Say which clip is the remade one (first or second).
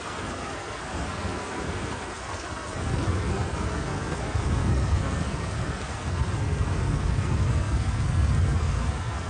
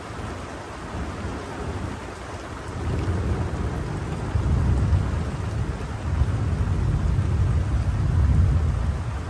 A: first